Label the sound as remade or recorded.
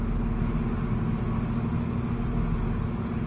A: recorded